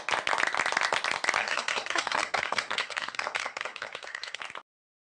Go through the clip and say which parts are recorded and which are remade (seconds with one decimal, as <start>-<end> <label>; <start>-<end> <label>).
0.0-1.4 recorded; 1.4-4.4 remade; 4.4-5.0 recorded